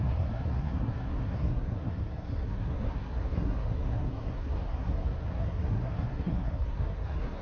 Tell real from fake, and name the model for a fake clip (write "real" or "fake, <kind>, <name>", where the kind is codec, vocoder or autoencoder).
fake, codec, SNAC